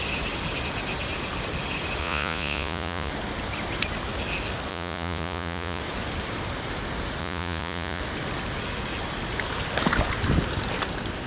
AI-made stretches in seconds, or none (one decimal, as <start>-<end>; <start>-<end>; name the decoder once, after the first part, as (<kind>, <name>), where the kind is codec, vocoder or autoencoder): 2.0-3.1 (vocoder, Vocos); 4.7-5.8; 7.2-8.0